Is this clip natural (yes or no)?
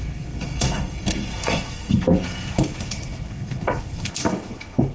no